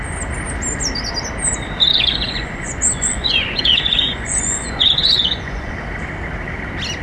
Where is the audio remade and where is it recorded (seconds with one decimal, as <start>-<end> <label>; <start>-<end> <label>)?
0.0-1.9 recorded; 1.9-5.7 remade; 5.7-7.0 recorded